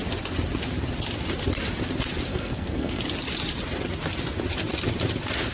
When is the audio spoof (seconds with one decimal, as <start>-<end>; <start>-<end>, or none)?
2.3-3.0